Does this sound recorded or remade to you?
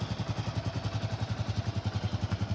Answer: recorded